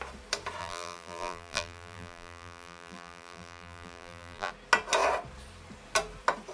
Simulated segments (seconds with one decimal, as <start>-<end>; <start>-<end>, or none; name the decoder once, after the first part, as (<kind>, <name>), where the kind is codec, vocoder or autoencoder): 0.6-4.5 (vocoder, BigVGAN v2)

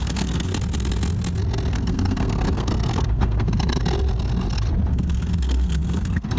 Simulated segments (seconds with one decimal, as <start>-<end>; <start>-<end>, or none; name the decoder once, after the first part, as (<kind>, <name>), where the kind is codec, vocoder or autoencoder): 0.0-0.5 (codec, SNAC); 1.7-3.8; 4.9-6.4

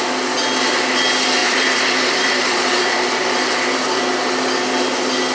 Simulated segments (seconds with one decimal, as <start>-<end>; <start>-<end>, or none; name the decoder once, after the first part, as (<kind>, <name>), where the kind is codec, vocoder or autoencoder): 1.4-4.0 (vocoder, BigVGAN v2)

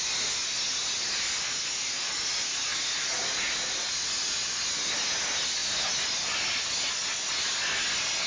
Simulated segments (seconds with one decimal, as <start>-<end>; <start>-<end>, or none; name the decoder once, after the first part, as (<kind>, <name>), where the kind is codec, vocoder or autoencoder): none

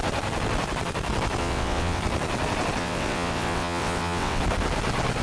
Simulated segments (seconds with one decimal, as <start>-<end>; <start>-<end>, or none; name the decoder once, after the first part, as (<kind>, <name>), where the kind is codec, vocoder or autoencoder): 1.4-2.0 (vocoder, WaveNeXt); 2.8-4.4

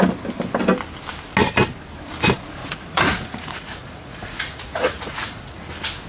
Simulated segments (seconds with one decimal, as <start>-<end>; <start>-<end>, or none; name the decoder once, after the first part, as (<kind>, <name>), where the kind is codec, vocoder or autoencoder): 2.6-5.6 (vocoder, Vocos)

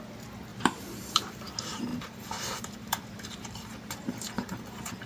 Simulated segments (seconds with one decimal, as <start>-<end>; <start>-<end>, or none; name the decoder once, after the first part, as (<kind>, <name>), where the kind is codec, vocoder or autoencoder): 0.5-1.5 (vocoder, BigVGAN v2); 1.9-5.1

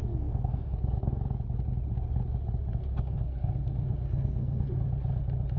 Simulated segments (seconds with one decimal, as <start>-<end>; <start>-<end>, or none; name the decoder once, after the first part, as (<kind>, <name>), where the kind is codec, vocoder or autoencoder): 0.0-1.2 (codec, SNAC); 2.8-4.8